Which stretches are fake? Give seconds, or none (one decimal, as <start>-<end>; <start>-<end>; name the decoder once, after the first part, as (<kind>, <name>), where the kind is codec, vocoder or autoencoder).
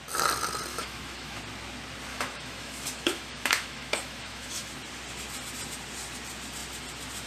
0.7-1.4 (autoencoder, DAC-VAE); 2.1-4.7